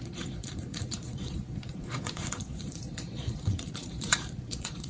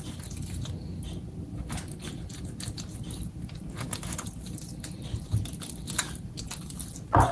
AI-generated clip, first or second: first